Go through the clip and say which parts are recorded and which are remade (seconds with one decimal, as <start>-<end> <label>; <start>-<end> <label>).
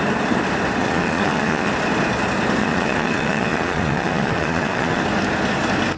0.0-0.8 recorded; 0.8-1.7 remade; 1.7-2.6 recorded; 2.6-5.0 remade; 5.0-6.0 recorded